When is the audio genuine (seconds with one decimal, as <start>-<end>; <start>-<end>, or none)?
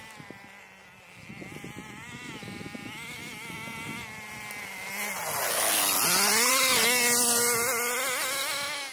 0.0-8.9